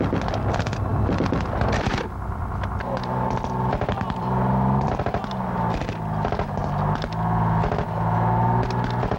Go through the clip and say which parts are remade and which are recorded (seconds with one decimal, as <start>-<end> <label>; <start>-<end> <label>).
0.0-0.9 recorded; 0.9-5.0 remade; 5.0-9.2 recorded